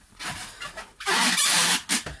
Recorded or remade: recorded